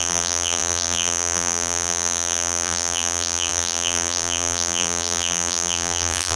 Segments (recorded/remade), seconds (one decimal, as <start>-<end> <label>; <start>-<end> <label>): 0.0-6.4 remade

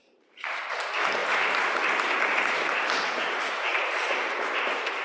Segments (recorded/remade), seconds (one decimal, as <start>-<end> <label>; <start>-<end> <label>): 0.0-0.6 remade; 0.6-1.2 recorded; 1.2-2.8 remade; 2.8-3.7 recorded; 3.7-5.0 remade

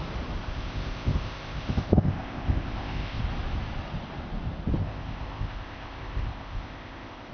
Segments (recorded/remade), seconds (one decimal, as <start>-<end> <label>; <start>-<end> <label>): 0.0-0.4 recorded; 0.4-3.2 remade; 3.2-4.8 recorded; 4.8-7.3 remade

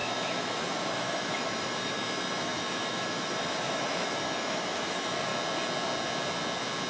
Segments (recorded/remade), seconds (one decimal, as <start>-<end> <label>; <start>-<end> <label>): 0.0-5.3 remade; 5.3-6.9 recorded

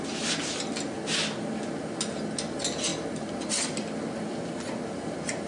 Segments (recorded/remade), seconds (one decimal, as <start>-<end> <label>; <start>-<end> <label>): 0.0-5.5 recorded

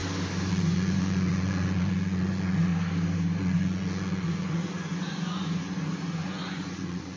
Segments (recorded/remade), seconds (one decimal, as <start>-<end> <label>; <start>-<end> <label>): 0.0-0.5 recorded; 0.5-2.7 remade; 2.7-3.4 recorded; 3.4-7.2 remade